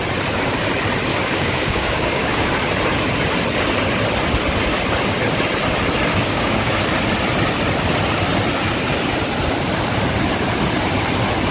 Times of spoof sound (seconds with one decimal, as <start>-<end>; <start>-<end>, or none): 1.1-2.5; 6.1-6.7